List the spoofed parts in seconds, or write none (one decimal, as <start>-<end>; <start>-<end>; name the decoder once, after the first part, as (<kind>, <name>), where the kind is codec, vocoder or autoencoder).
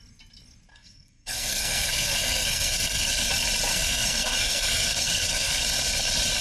0.7-3.3 (codec, SNAC); 3.7-5.6